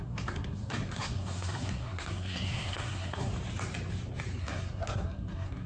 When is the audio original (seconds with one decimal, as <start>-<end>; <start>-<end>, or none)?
3.3-4.4